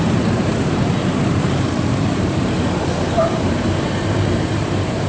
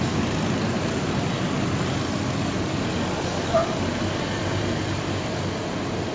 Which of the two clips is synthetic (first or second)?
first